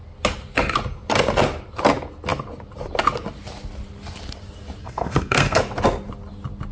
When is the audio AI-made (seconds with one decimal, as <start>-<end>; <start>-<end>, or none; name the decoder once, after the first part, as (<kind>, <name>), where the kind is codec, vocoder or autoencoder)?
4.8-5.6 (codec, SNAC)